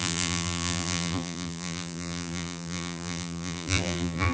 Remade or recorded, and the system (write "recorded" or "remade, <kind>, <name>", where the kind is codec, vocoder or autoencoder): remade, vocoder, BigVGAN v2